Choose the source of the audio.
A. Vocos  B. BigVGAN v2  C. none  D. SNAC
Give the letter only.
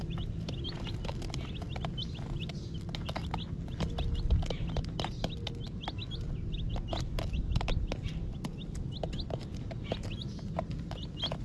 C